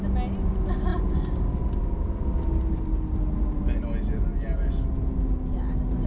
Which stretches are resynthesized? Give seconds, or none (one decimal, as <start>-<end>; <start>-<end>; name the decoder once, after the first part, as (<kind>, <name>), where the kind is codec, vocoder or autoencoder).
none